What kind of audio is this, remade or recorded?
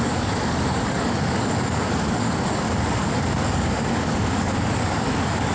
remade